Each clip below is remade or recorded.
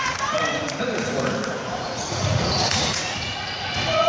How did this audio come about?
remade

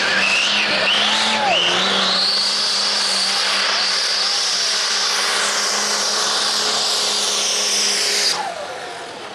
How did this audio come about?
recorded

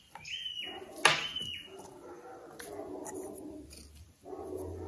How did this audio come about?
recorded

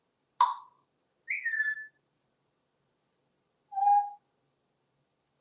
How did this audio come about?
recorded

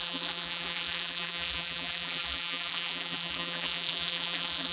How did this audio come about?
remade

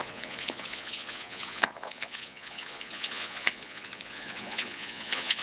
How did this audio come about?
remade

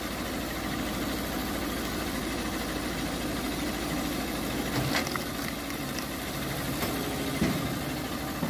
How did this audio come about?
recorded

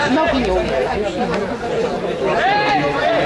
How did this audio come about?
recorded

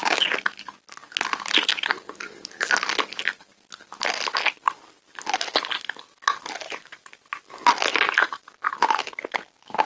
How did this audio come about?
recorded